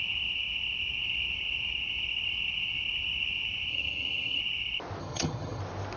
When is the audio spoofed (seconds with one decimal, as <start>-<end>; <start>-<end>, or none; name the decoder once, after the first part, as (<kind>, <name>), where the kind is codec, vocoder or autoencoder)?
3.7-4.4 (vocoder, HiFi-GAN); 5.0-5.6